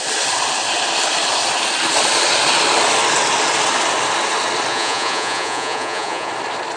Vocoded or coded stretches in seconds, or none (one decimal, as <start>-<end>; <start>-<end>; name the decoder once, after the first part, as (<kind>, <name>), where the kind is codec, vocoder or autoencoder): 4.7-6.3 (vocoder, Vocos)